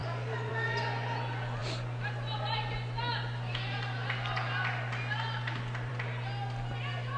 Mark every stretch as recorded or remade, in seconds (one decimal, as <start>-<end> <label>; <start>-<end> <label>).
0.0-7.2 recorded